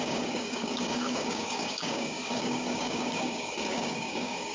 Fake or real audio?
fake